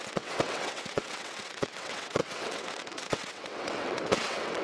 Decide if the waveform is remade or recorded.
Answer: remade